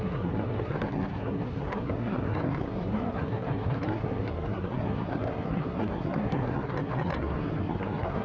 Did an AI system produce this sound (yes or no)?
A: yes